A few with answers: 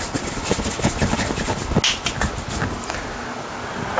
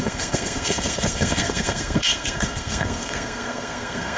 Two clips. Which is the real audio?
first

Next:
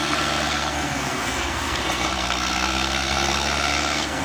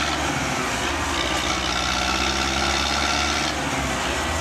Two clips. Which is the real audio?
second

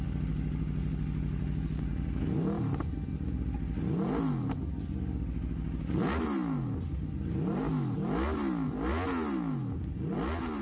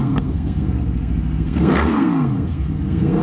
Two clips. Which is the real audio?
first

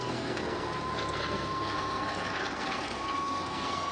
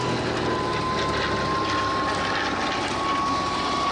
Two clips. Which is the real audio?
second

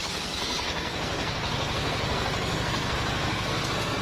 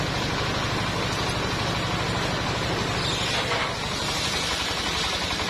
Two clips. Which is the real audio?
second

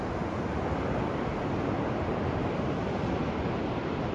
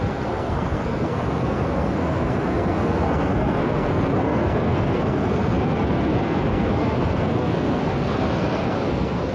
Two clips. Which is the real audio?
first